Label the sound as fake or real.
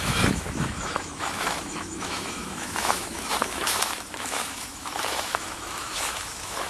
fake